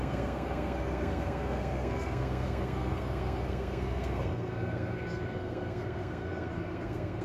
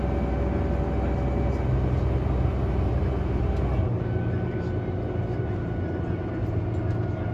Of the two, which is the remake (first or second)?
first